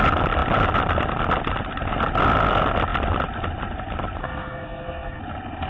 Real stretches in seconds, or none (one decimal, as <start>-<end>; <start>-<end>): 0.0-4.2; 5.2-5.7